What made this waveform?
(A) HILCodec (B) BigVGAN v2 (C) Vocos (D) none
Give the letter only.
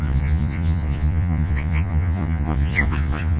C